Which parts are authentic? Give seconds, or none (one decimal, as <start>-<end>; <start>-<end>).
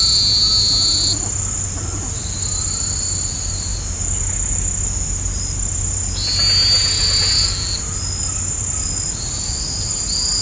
0.0-10.4